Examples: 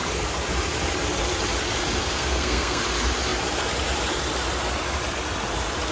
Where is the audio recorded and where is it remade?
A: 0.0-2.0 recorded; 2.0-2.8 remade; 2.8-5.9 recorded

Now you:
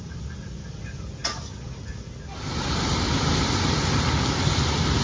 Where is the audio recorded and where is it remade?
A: 0.0-5.0 recorded